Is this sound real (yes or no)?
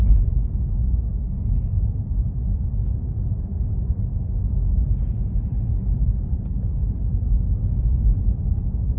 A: yes